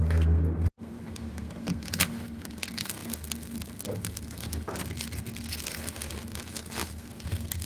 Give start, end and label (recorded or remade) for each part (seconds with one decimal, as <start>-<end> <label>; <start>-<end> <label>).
0.0-7.7 remade